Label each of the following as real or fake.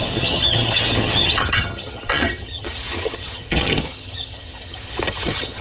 fake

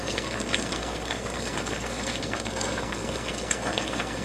fake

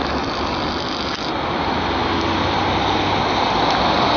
real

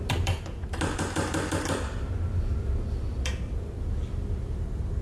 real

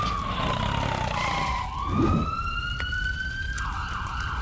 real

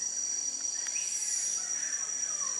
real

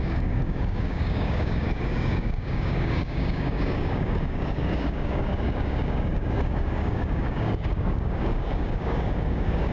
fake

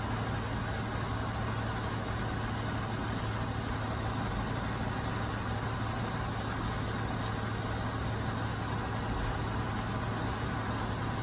real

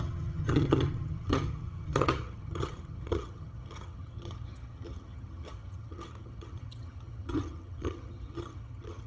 fake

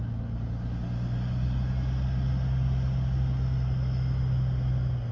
real